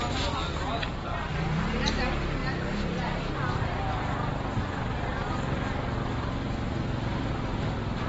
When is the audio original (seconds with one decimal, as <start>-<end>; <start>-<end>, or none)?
0.0-8.1

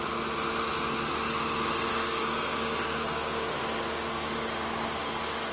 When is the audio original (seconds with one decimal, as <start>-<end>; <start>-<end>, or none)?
0.0-1.9

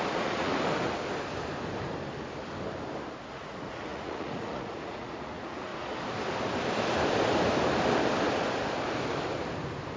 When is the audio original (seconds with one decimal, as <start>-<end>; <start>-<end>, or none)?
0.5-3.3; 5.7-10.0

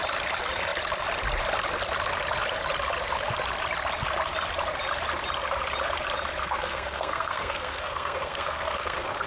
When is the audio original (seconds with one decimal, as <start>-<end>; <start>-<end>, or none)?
0.0-6.4

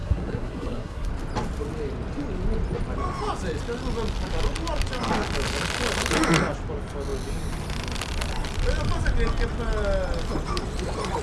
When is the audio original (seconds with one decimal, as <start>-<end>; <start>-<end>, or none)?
1.1-11.2

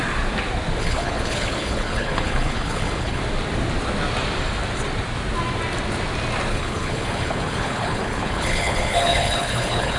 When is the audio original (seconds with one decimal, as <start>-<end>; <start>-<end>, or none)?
0.0-0.8; 3.2-6.5